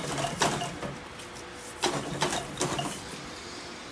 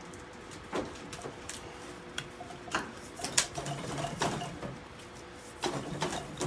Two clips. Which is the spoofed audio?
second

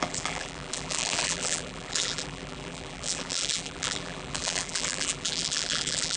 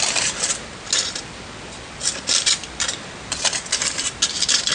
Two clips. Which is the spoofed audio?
first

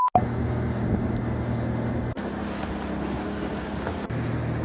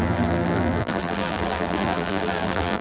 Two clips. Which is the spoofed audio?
second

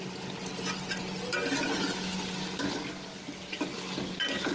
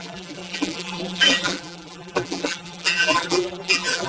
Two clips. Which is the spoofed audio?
second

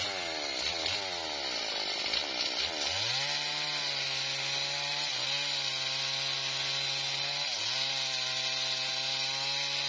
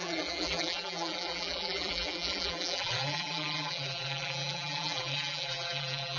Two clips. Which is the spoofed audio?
second